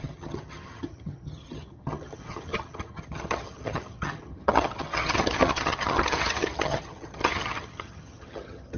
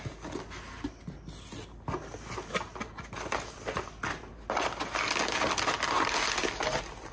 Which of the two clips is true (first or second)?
second